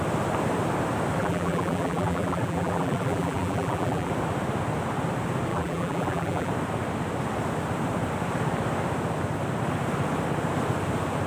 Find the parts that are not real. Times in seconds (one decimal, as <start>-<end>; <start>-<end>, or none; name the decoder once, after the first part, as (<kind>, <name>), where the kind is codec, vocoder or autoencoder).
1.2-4.1 (vocoder, BigVGAN v2); 5.5-6.5